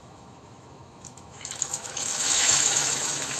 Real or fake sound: fake